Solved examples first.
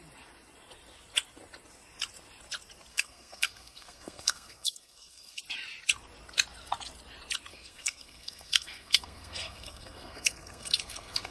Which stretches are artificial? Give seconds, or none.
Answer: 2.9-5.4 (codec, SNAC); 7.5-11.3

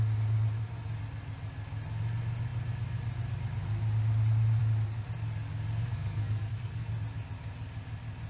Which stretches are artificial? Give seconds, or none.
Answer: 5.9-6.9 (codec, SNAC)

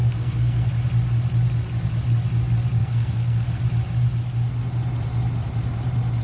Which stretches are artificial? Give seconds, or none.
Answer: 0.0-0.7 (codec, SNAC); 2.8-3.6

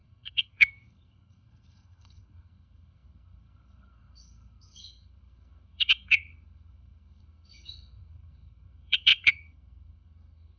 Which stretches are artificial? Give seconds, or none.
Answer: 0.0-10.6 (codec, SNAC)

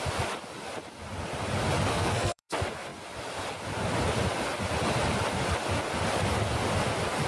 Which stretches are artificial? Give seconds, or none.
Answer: 1.9-2.5 (codec, SNAC)

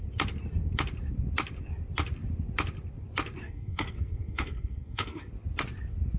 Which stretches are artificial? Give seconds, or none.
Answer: 3.4-5.3 (codec, SNAC)